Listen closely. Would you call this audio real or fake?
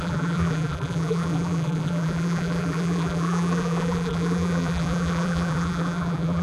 fake